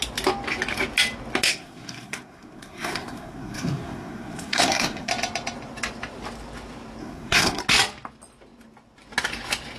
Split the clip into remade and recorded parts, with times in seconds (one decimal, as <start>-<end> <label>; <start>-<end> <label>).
0.0-1.5 recorded; 1.5-5.1 remade; 5.1-7.0 recorded; 7.0-7.6 remade; 7.6-9.8 recorded